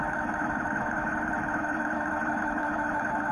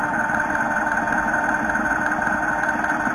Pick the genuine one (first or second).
second